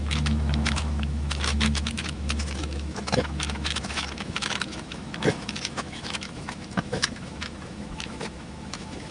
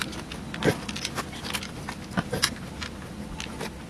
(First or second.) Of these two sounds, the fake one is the first